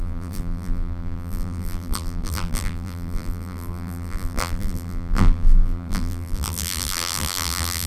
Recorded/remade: remade